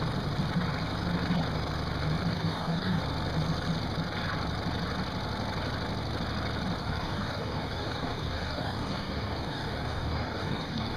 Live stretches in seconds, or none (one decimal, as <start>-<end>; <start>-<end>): 0.0-2.3; 3.0-6.8